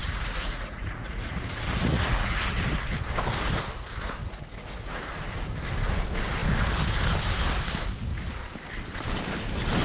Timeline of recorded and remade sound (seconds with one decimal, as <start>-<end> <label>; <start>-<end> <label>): 0.0-2.4 remade; 2.4-4.2 recorded; 4.2-4.9 remade; 4.9-9.8 recorded